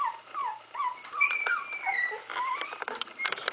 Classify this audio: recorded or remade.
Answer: remade